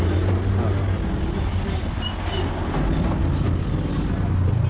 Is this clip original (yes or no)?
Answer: yes